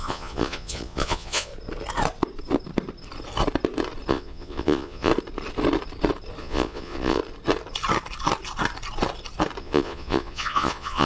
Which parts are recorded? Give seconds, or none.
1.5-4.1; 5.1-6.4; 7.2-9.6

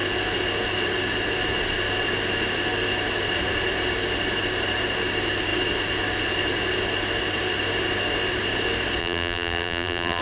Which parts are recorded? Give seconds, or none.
0.0-9.0

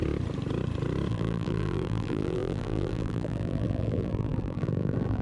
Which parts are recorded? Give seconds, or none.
0.0-1.1

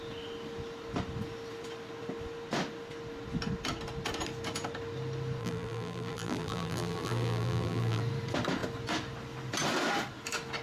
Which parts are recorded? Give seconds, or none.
0.0-5.4; 8.0-10.6

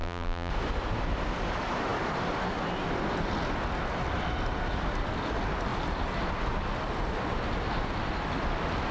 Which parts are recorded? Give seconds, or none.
0.5-8.9